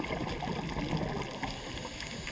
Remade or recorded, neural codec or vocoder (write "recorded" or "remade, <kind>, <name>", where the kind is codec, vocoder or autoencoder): recorded